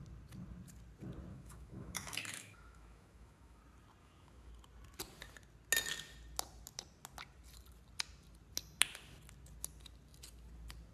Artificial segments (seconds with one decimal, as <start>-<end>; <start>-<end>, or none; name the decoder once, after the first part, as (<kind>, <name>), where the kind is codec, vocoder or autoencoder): 1.3-3.6 (autoencoder, DAC-VAE); 4.0-4.5